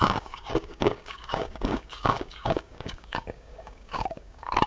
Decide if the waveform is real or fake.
fake